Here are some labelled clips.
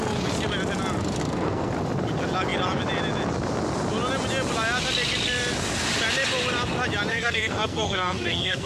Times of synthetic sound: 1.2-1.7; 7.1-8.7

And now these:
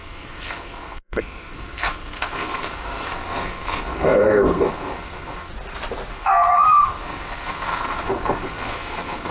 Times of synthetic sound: 0.0-5.5; 6.1-9.3